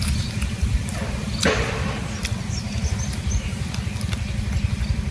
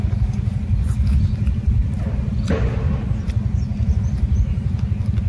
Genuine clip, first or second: second